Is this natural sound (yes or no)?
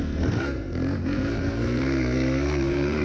no